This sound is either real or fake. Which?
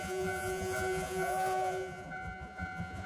fake